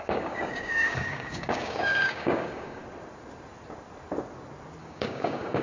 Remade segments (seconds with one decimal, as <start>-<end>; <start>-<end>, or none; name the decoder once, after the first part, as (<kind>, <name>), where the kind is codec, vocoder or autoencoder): 0.0-2.8 (codec, DAC); 4.8-5.6